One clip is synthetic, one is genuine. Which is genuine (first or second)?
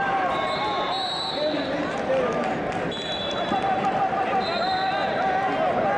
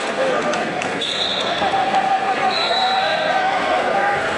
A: first